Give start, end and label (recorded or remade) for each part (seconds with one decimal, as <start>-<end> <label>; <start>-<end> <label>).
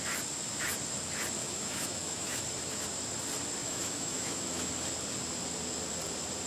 0.0-1.4 recorded; 1.4-2.4 remade; 2.4-3.6 recorded; 3.6-4.7 remade; 4.7-6.5 recorded